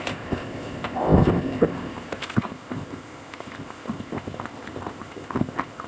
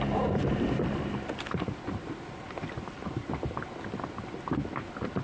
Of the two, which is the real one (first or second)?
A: second